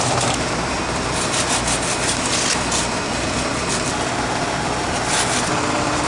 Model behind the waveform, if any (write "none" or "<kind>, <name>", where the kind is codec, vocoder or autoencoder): vocoder, BigVGAN v2